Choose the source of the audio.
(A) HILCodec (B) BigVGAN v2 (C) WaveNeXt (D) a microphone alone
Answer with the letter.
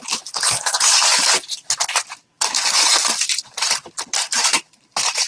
B